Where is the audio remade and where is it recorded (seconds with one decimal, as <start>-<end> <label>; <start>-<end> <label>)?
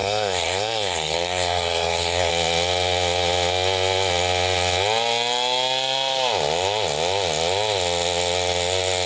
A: 0.0-2.3 remade; 2.3-9.1 recorded